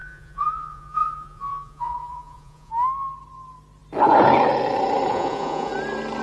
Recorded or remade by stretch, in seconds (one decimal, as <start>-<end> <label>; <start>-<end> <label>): 0.0-2.7 remade; 2.7-5.1 recorded; 5.1-5.7 remade; 5.7-6.2 recorded

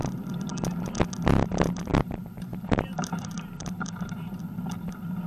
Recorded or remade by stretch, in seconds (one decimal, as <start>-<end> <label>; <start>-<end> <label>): 0.0-1.9 recorded; 1.9-4.4 remade; 4.4-5.3 recorded

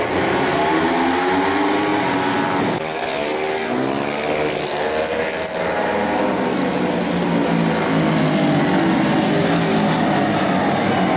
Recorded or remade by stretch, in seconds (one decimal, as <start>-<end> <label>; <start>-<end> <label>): 0.0-11.2 recorded

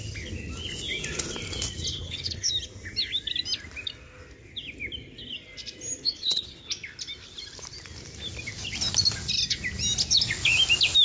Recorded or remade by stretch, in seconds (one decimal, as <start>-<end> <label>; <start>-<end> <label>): 0.0-1.9 recorded; 1.9-2.5 remade; 2.5-6.0 recorded; 6.0-6.7 remade; 6.7-11.0 recorded

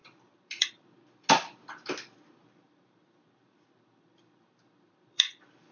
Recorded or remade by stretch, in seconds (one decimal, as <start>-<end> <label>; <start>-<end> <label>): 0.0-0.9 remade; 0.9-2.4 recorded; 2.4-5.7 remade

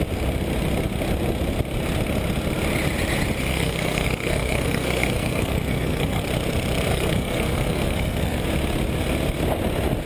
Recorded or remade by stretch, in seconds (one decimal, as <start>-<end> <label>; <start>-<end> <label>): 0.0-3.5 recorded; 3.5-6.2 remade; 6.2-6.9 recorded; 6.9-8.4 remade; 8.4-10.1 recorded